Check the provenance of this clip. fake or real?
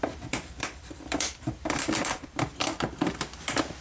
fake